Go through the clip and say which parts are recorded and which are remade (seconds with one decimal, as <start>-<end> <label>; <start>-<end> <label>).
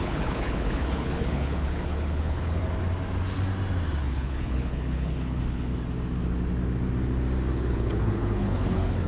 0.0-2.6 remade; 2.6-4.0 recorded; 4.0-5.7 remade; 5.7-7.5 recorded; 7.5-9.1 remade